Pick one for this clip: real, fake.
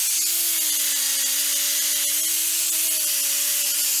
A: real